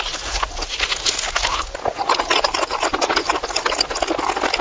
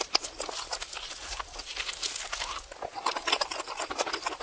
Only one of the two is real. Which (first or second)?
first